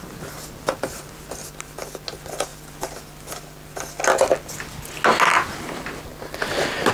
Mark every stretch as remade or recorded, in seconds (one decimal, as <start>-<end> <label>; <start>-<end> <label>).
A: 0.0-6.9 recorded